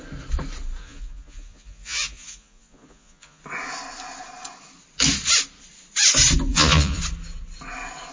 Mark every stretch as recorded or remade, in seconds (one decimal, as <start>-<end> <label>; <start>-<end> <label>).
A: 0.0-0.8 recorded; 0.8-3.4 remade; 3.4-6.5 recorded; 6.5-7.0 remade; 7.0-8.1 recorded